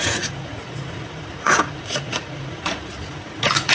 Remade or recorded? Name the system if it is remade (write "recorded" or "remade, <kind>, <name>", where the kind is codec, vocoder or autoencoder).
remade, vocoder, Vocos